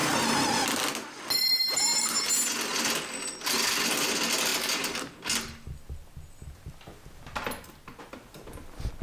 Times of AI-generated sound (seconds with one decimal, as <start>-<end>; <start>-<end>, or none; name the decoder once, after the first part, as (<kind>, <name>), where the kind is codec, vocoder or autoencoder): none